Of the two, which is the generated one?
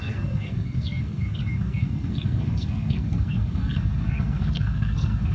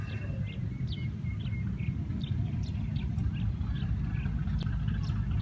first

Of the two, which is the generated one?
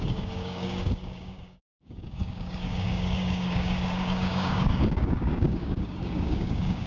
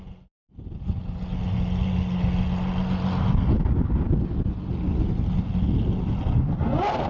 first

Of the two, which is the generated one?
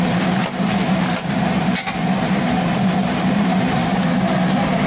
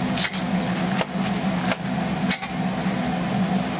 first